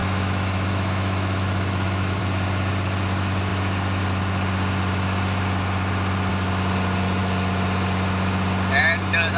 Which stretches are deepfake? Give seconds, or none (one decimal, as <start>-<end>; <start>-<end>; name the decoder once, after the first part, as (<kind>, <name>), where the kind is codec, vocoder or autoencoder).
0.0-2.2 (autoencoder, DAC-VAE)